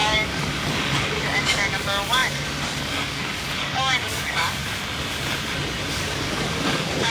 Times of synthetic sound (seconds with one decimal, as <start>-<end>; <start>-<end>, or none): 0.0-4.6; 5.9-7.1